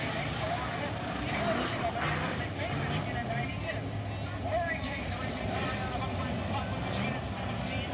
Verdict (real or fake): real